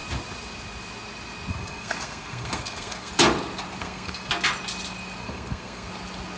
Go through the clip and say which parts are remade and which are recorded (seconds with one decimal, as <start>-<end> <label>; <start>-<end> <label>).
0.0-1.5 recorded; 1.5-3.1 remade; 3.1-3.8 recorded; 3.8-4.3 remade; 4.3-5.2 recorded; 5.2-5.9 remade; 5.9-6.4 recorded